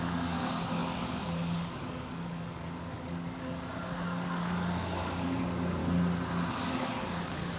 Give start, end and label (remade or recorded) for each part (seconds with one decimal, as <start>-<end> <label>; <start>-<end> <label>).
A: 0.0-5.8 remade; 5.8-6.5 recorded; 6.5-7.6 remade